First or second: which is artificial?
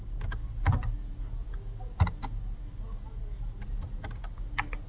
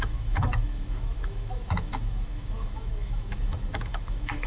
second